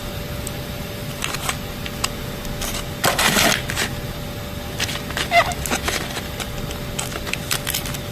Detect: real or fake real